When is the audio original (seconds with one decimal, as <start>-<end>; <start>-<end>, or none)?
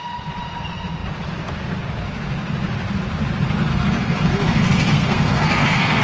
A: 0.0-3.7